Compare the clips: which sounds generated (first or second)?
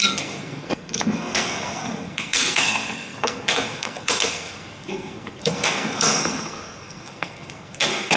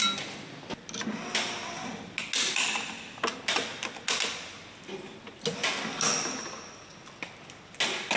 first